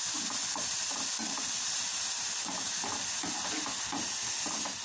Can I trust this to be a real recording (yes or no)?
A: yes